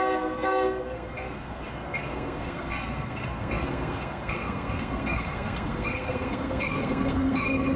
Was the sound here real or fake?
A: fake